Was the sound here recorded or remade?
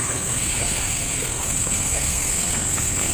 remade